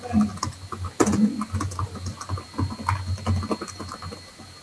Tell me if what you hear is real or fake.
real